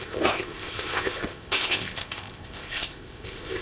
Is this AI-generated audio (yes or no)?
yes